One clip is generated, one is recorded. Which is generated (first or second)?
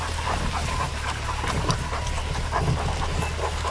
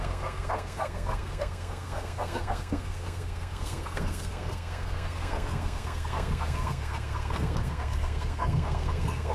second